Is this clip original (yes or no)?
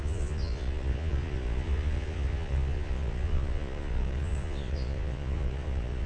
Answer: no